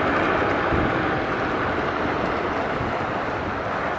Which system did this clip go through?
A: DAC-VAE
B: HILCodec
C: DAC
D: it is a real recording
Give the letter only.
D